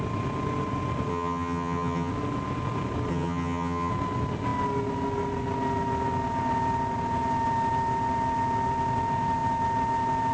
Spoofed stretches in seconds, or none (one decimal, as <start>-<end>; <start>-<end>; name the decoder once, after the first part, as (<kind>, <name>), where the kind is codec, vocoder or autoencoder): 1.1-2.1 (vocoder, HiFi-GAN); 3.1-3.9